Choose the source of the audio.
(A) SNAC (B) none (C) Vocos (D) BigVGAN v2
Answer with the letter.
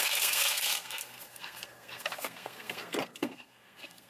A